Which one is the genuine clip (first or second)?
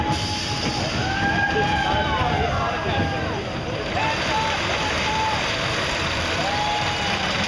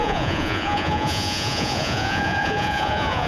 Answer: first